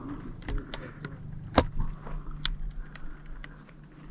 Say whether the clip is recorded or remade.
recorded